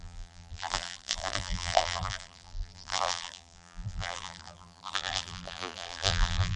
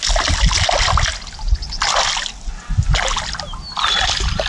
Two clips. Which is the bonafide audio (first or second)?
second